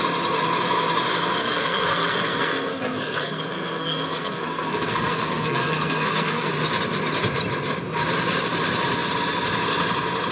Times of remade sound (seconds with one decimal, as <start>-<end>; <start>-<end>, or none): 1.4-6.5